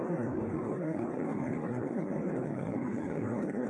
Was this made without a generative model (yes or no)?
no